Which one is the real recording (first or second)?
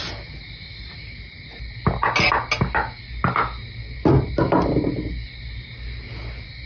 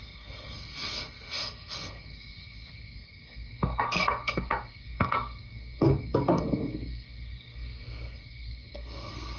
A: first